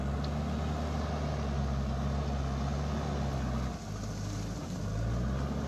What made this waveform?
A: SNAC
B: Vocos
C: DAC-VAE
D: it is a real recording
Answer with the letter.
D